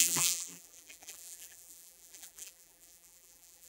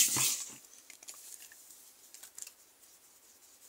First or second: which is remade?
first